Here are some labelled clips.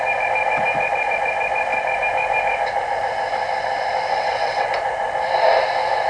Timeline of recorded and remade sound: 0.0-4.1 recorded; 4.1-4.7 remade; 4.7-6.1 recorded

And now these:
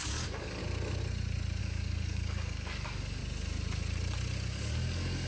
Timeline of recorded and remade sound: 0.0-0.6 remade; 0.6-1.6 recorded; 1.6-3.2 remade; 3.2-4.5 recorded; 4.5-5.3 remade

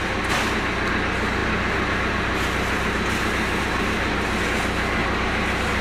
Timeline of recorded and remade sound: 0.0-1.4 recorded; 1.4-4.4 remade; 4.4-5.0 recorded; 5.0-5.8 remade

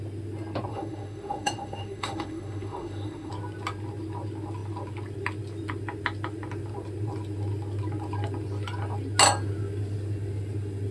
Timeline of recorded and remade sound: 0.0-0.7 recorded; 0.7-3.3 remade; 3.3-10.9 recorded

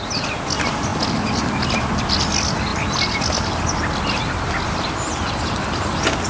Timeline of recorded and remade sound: 0.0-6.3 recorded

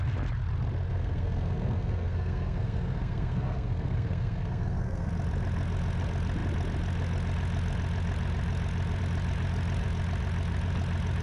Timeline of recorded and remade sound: 0.0-0.9 recorded; 0.9-5.1 remade; 5.1-11.2 recorded